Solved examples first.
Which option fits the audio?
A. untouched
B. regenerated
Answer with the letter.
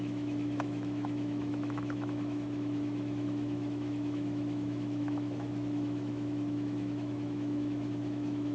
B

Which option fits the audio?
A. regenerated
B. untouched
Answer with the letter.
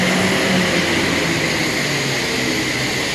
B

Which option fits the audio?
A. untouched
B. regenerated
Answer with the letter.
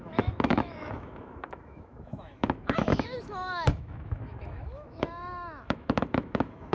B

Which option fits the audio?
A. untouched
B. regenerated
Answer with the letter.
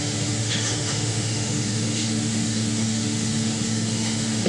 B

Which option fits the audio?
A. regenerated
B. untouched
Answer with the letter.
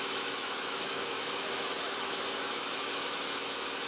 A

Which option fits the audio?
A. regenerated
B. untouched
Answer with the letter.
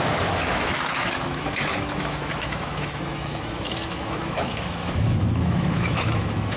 A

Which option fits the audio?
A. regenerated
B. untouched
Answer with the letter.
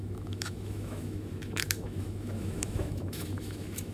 A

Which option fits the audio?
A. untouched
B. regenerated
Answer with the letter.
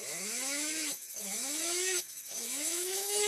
B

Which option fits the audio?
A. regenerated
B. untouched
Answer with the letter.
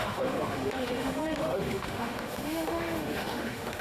A